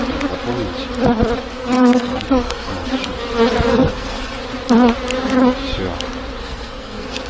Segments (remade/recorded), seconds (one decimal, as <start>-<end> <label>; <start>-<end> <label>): 0.0-1.5 recorded; 1.5-2.9 remade; 2.9-3.7 recorded; 3.7-4.4 remade; 4.4-6.4 recorded; 6.4-7.3 remade